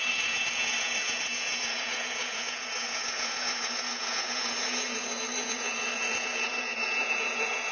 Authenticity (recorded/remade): remade